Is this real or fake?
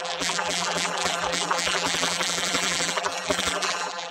fake